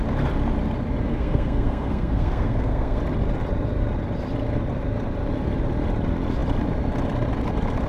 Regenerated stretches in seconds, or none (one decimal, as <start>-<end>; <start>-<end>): 1.1-3.0

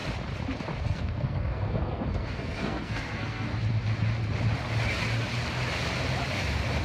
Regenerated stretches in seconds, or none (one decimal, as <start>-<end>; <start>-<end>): 0.8-3.5

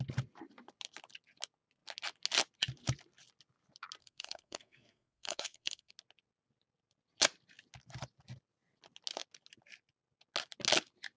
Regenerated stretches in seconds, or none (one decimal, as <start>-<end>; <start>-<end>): 4.0-5.9

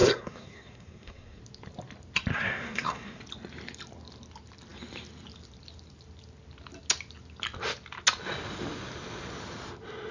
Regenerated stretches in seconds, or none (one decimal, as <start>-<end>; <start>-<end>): 0.0-1.4; 2.3-3.2

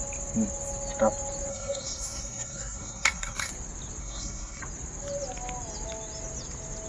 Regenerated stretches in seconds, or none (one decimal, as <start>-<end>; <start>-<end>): 1.5-3.5; 4.0-4.6

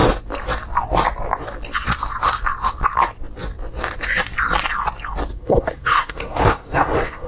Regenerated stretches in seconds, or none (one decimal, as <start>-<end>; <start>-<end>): 5.3-7.3

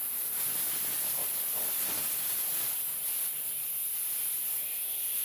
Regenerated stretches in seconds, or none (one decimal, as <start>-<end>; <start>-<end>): none

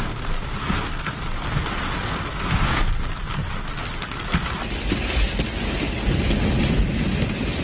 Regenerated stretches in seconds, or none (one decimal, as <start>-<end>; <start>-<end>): 0.6-1.2; 2.3-2.9